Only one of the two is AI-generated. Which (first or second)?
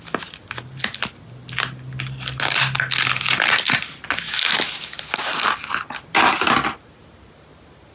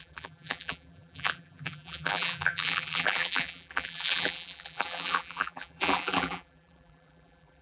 second